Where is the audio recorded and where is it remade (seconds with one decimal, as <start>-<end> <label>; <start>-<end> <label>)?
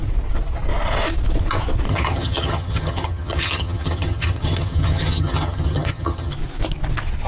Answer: 0.0-1.9 recorded; 1.9-6.3 remade; 6.3-7.3 recorded